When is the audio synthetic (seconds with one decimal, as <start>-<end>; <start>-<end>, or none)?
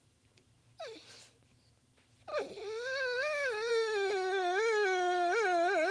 0.0-2.3; 3.7-5.9